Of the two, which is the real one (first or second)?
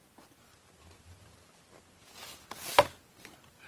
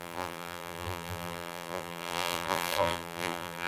first